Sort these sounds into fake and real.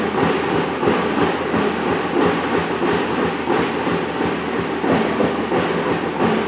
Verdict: real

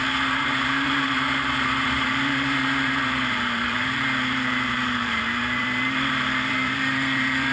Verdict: fake